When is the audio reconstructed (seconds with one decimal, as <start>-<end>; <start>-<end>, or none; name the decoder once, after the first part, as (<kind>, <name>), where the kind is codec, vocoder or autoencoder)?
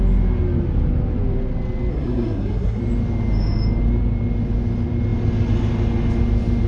1.9-2.8 (codec, SNAC)